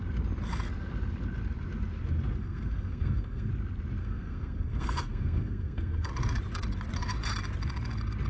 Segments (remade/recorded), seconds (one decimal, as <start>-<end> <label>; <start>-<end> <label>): 0.0-2.4 recorded; 2.4-3.5 remade; 3.5-4.0 recorded; 4.0-6.1 remade; 6.1-8.3 recorded